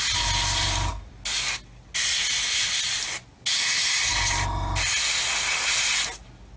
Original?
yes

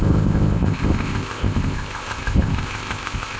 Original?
no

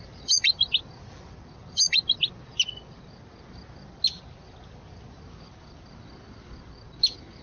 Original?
yes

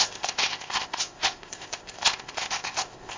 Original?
no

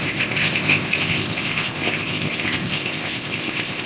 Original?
no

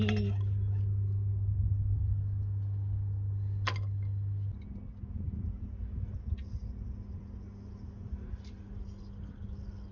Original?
yes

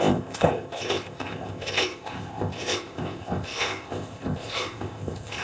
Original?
no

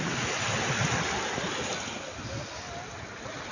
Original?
yes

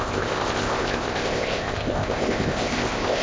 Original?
no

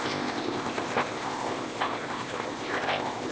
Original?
no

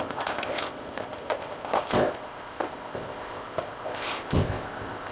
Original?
no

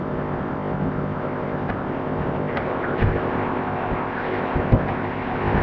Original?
no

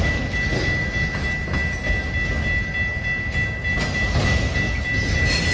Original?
yes